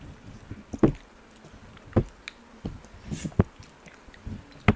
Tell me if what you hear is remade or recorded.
recorded